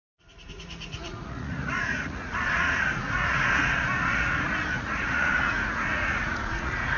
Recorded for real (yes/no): no